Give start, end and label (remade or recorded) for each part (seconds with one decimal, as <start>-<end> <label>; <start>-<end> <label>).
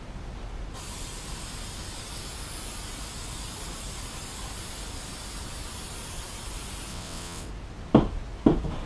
0.0-6.9 recorded; 6.9-7.5 remade; 7.5-8.9 recorded